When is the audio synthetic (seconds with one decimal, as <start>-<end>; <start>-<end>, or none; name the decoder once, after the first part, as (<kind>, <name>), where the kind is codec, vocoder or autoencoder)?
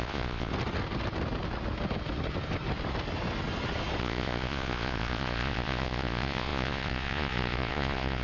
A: 0.0-0.5 (vocoder, Vocos); 4.0-8.2